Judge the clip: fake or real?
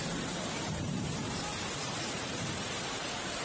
fake